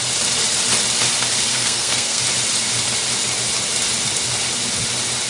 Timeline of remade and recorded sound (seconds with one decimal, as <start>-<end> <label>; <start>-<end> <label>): 0.0-1.5 recorded; 1.5-2.2 remade; 2.2-5.3 recorded